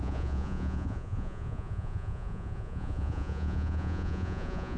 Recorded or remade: remade